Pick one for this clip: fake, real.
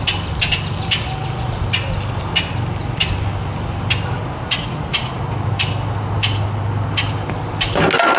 real